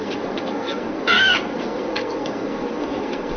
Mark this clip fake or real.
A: fake